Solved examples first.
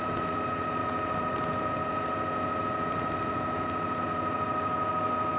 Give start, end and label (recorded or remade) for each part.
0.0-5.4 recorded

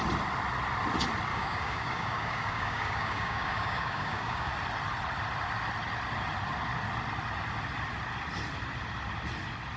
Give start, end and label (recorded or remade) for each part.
0.0-1.3 recorded; 1.3-4.5 remade; 4.5-9.8 recorded